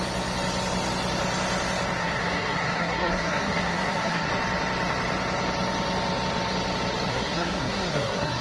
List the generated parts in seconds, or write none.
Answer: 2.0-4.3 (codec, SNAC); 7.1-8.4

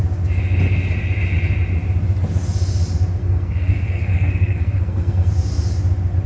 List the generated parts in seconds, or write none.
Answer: 3.2-5.3 (codec, SNAC)

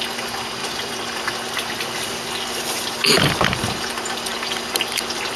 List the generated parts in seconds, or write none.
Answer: none

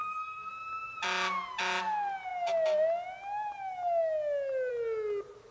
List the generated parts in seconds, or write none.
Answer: 0.0-0.5 (codec, SNAC)

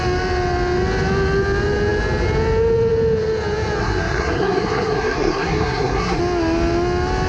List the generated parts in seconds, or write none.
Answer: 3.8-6.2 (codec, SNAC)